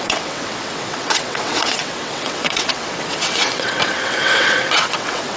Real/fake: fake